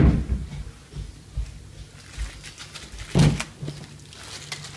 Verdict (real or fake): real